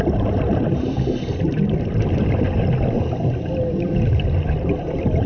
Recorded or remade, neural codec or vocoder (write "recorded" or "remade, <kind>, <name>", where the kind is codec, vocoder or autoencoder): recorded